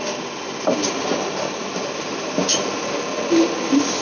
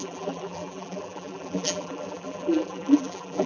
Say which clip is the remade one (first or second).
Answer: second